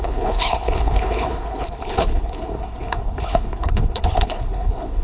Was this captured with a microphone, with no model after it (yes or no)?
no